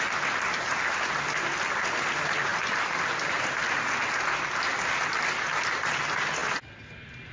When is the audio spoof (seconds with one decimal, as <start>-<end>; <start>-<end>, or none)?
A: none